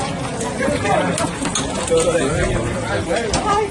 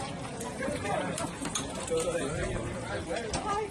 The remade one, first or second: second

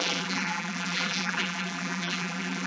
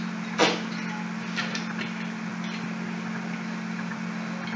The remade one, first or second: first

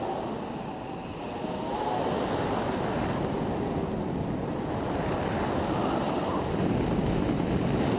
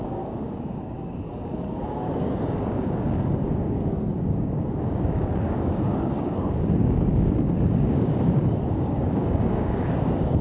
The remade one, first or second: second